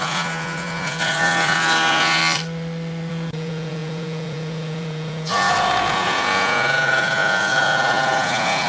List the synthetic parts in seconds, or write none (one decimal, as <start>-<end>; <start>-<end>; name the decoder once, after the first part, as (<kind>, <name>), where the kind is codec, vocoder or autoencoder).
0.0-2.2 (vocoder, Vocos); 3.1-8.7